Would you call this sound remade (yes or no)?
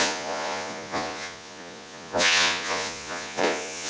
yes